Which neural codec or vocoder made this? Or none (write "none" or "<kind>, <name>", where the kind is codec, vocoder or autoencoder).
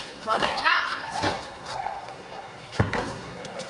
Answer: codec, SNAC